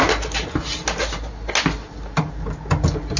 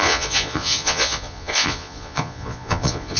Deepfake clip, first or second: second